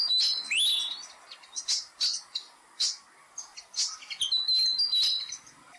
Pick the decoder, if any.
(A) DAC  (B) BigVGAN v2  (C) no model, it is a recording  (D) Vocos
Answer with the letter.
C